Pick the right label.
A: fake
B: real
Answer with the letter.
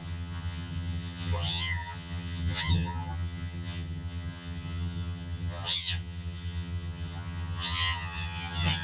A